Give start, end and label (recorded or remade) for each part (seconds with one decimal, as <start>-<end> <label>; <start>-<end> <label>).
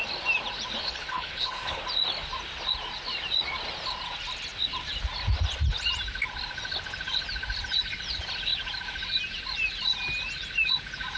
0.0-0.8 recorded; 0.8-1.8 remade; 1.8-11.2 recorded